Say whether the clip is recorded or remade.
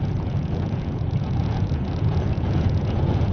remade